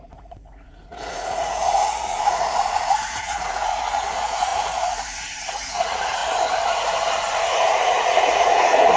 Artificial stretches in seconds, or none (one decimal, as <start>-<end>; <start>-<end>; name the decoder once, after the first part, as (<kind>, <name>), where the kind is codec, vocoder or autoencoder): 0.0-6.2 (vocoder, Vocos); 7.4-9.0